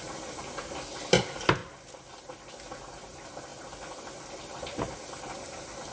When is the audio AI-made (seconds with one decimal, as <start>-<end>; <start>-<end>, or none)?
none